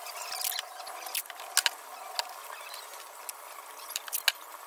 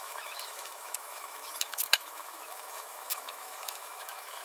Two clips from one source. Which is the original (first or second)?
first